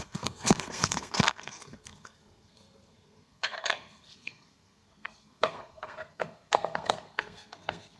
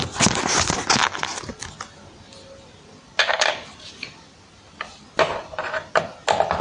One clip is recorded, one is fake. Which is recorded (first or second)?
second